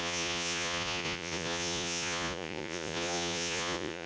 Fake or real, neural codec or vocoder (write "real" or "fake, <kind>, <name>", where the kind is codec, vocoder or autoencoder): fake, vocoder, Vocos